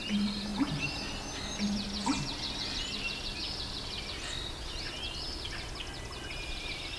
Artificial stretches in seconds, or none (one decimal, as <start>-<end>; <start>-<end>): none

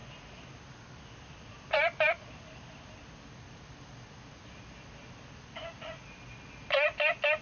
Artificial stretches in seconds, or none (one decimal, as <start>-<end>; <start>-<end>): none

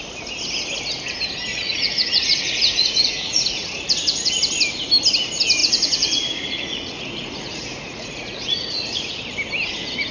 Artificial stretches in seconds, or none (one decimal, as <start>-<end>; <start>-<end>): 1.5-4.3; 5.6-9.2

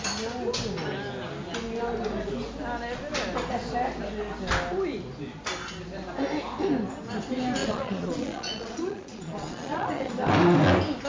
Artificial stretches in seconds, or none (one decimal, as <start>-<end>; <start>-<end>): 7.6-10.1

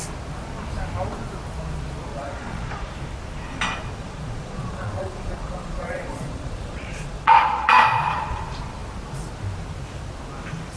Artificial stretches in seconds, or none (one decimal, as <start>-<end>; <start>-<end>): 2.1-2.9; 4.0-8.4

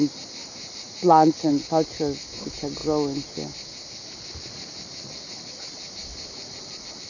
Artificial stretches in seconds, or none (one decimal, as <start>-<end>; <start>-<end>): 0.4-1.5

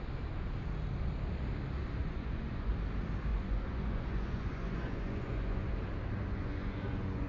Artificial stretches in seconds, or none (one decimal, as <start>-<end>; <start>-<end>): 2.0-2.7; 3.3-5.7; 6.3-7.3

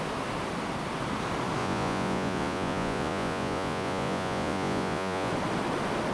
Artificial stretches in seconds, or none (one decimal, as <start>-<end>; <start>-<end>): 1.6-5.3